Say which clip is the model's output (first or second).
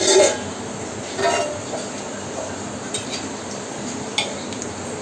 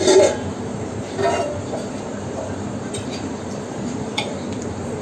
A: second